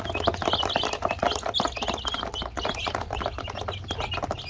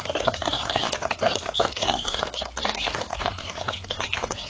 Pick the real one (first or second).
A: first